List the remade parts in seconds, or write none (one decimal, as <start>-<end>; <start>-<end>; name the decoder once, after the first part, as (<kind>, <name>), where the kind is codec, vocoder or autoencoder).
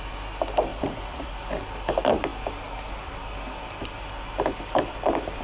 0.7-1.3 (vocoder, Vocos)